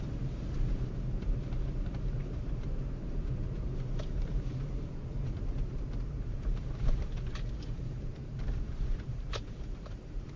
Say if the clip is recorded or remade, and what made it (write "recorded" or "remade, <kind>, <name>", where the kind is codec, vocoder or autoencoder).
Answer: remade, vocoder, BigVGAN v2